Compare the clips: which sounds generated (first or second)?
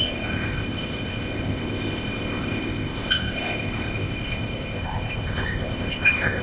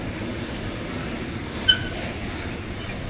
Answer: first